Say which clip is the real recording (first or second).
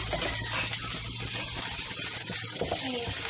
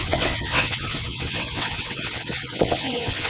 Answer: first